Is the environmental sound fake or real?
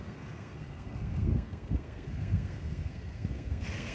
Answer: fake